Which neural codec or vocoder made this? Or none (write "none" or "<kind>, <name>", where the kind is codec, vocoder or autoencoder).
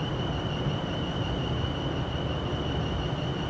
none